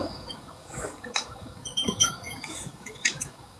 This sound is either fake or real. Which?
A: fake